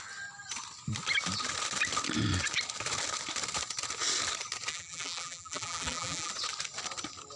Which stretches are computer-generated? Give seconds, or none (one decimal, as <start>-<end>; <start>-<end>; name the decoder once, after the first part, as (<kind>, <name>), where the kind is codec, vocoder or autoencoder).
4.7-6.3 (vocoder, BigVGAN v2)

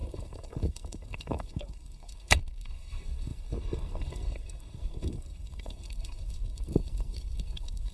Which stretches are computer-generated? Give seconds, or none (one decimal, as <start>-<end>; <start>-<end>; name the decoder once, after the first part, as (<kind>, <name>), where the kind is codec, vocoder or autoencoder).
0.0-7.9 (codec, SNAC)

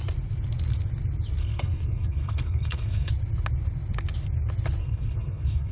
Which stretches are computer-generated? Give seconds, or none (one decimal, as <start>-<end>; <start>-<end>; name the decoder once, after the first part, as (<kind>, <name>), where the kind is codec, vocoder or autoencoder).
1.4-3.1 (codec, SNAC); 4.8-5.7

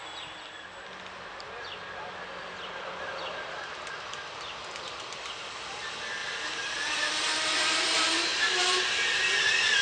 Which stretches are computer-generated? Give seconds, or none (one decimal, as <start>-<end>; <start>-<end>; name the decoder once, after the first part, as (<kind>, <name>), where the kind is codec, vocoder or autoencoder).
2.4-5.5 (vocoder, BigVGAN v2); 6.2-7.8

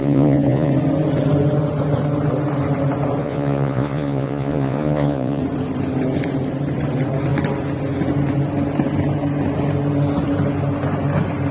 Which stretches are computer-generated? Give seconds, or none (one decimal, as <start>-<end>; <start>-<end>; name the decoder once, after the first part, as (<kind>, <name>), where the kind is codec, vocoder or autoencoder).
0.0-0.7 (vocoder, Vocos); 3.2-5.4

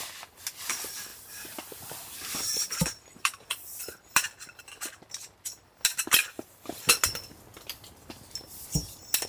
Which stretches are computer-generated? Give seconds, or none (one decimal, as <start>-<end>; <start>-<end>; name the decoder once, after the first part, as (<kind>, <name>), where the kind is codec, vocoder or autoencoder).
1.1-4.6 (vocoder, BigVGAN v2)